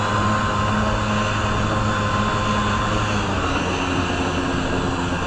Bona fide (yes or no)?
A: yes